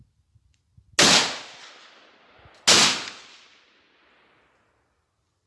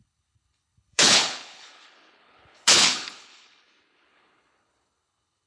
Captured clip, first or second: first